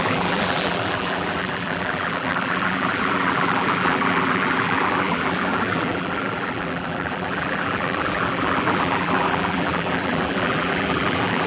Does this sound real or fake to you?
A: fake